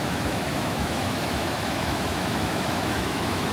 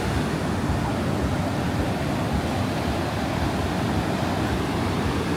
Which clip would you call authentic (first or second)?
second